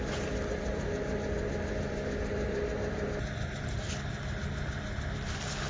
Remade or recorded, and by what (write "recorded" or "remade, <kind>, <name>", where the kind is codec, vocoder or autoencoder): recorded